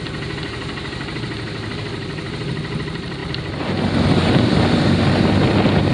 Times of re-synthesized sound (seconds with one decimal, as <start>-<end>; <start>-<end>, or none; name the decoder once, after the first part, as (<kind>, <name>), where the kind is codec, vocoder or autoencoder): none